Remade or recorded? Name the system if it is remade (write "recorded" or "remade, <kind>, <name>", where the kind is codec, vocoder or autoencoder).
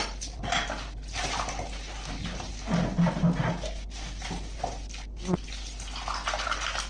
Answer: recorded